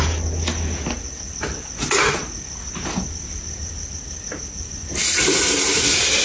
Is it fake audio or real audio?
real